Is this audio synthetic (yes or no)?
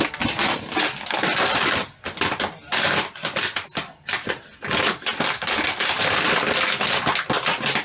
no